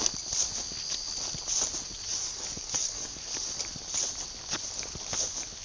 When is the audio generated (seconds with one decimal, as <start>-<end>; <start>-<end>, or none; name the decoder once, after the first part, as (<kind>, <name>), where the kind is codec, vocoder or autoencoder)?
2.1-3.2 (codec, DAC)